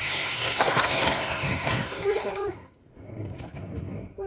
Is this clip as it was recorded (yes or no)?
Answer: no